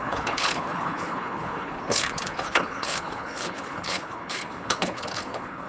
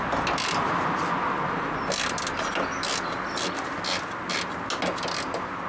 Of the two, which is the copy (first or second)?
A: first